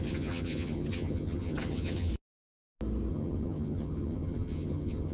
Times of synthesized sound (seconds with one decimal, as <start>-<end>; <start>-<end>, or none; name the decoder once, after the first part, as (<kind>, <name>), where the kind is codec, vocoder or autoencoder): 0.0-2.1 (vocoder, HiFi-GAN); 3.1-5.1